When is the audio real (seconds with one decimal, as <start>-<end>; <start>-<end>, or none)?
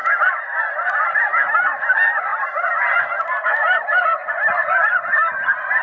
0.0-0.7